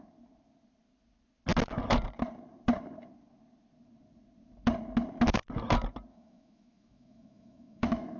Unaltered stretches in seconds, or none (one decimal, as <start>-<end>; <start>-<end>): 0.0-6.1